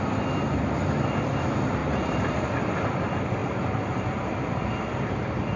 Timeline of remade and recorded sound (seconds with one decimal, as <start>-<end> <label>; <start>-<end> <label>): 0.0-1.8 recorded; 1.8-2.9 remade; 2.9-3.4 recorded; 3.4-4.1 remade; 4.1-5.6 recorded